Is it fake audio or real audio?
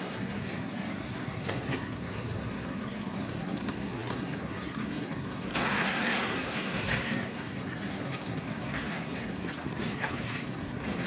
fake